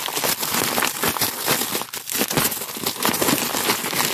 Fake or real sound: real